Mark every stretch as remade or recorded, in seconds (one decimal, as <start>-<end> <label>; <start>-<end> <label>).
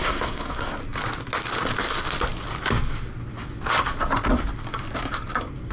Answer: 0.0-0.8 remade; 0.8-5.7 recorded